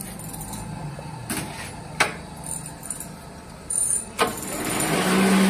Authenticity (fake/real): real